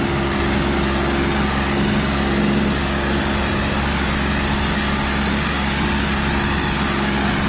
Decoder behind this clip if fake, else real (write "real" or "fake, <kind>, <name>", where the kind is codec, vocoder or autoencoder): real